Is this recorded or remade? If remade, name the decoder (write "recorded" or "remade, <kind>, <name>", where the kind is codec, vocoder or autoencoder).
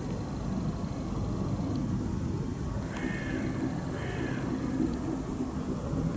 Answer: recorded